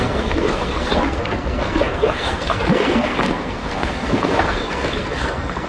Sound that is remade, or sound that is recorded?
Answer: remade